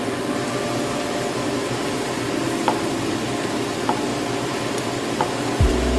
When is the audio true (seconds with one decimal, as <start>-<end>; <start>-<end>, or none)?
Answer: 0.0-6.0